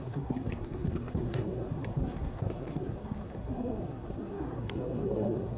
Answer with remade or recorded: remade